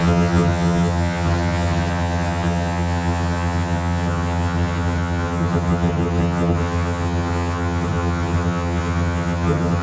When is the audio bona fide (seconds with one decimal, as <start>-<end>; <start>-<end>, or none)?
none